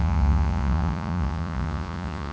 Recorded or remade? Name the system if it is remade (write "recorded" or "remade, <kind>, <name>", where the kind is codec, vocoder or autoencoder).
remade, vocoder, Vocos